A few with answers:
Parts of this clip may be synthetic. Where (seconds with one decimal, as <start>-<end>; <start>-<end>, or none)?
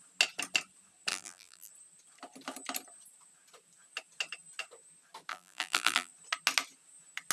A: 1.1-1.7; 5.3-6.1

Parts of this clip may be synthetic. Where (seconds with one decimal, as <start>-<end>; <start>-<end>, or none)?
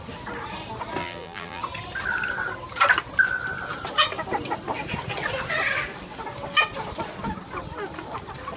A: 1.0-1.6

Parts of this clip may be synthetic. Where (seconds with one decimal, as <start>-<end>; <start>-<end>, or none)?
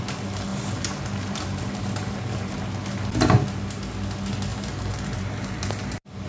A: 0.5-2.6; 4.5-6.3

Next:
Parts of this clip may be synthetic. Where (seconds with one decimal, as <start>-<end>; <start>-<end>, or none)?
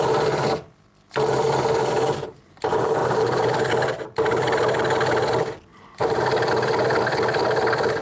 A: 3.0-3.7; 5.7-6.5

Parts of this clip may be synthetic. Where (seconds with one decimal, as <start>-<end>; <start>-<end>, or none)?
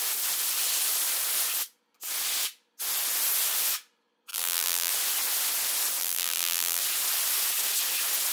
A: 4.3-4.9; 6.0-6.8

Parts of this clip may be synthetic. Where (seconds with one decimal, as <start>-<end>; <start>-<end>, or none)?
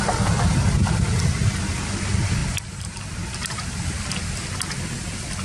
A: 2.4-3.1